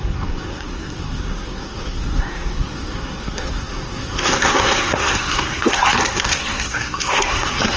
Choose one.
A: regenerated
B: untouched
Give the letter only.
A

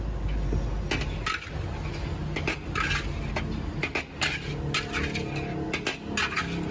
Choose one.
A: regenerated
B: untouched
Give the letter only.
B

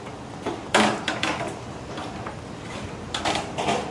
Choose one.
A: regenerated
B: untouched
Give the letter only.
A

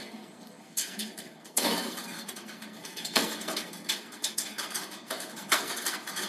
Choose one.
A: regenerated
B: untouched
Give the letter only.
A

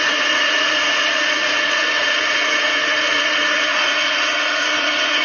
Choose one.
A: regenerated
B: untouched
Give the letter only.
A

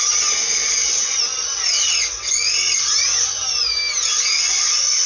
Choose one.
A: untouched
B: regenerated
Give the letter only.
A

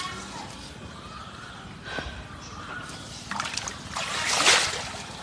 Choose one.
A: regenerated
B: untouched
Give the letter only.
B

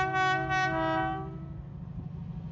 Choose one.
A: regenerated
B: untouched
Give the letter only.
B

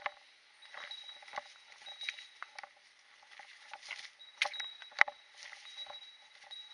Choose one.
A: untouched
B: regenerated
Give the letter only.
A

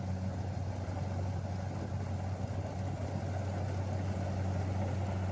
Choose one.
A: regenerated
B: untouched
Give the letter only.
B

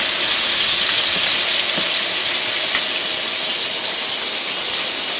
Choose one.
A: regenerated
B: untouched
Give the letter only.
B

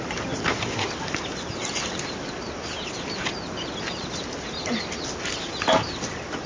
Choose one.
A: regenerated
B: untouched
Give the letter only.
B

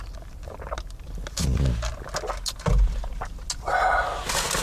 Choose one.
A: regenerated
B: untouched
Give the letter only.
B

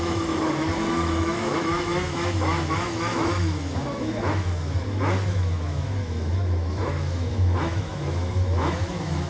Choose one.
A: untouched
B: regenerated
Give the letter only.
B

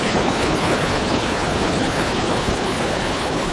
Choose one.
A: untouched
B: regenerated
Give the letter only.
B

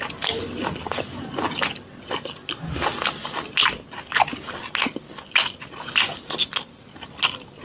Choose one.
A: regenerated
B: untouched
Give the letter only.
B